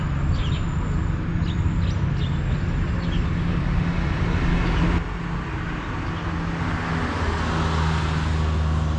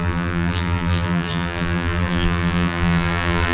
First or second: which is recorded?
first